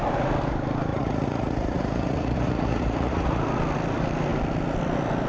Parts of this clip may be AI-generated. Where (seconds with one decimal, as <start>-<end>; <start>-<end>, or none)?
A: 0.9-3.4